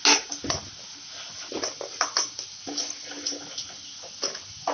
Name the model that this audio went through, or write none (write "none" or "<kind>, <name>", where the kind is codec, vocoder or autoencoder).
none